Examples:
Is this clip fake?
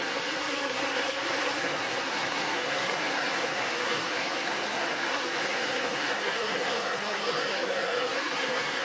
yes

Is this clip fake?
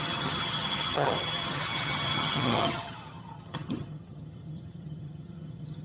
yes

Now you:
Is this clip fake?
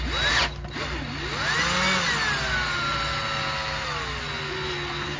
no